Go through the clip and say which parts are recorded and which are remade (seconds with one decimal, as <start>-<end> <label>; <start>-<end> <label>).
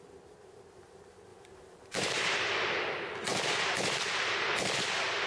0.0-1.3 recorded; 1.3-2.2 remade; 2.2-5.3 recorded